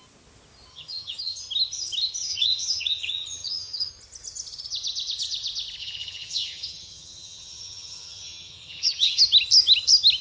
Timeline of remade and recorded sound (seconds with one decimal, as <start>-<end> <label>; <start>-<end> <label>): 0.0-0.7 recorded; 0.7-1.4 remade; 1.4-2.3 recorded; 2.3-3.9 remade; 3.9-5.8 recorded; 5.8-9.2 remade; 9.2-10.2 recorded